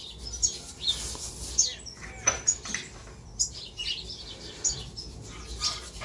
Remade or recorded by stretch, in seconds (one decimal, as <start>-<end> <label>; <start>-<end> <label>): 0.0-6.0 recorded